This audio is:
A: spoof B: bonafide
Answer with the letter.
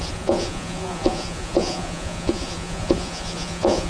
A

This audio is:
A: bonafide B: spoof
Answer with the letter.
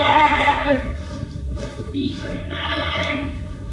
B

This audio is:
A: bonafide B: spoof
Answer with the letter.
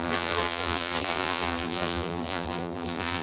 B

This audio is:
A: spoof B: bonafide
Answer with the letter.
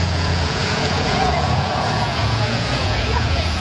A